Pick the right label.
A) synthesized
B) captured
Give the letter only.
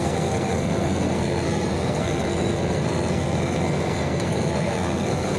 A